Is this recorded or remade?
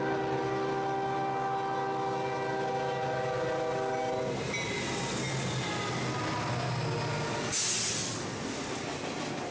recorded